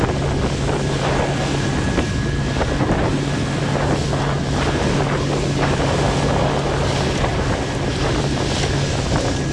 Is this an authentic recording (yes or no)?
yes